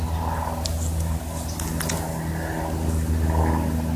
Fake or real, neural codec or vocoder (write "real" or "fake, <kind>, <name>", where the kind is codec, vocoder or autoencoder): real